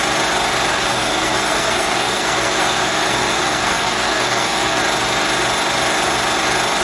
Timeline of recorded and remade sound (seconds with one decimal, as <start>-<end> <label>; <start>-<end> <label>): 0.0-0.7 recorded; 0.7-4.8 remade; 4.8-6.8 recorded